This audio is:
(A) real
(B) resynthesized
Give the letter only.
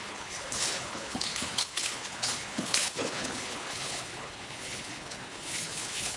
B